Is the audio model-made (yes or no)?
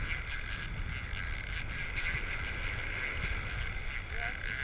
no